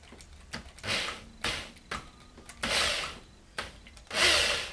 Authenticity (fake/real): real